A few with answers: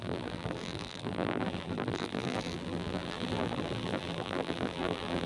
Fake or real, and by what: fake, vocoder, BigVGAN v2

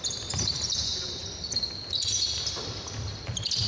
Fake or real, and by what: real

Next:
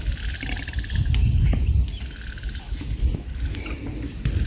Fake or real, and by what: real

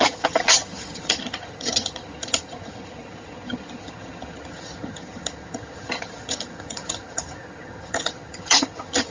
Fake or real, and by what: fake, vocoder, HiFi-GAN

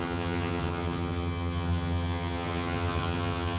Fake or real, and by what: fake, vocoder, HiFi-GAN